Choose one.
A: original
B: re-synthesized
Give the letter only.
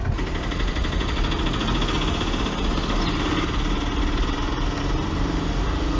A